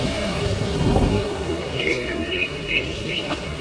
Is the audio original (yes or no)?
no